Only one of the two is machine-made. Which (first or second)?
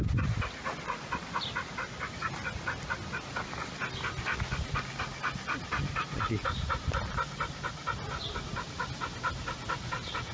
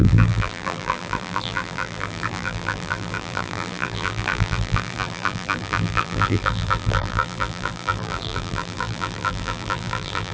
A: second